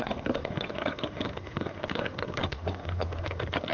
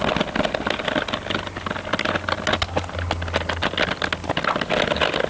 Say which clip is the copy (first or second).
first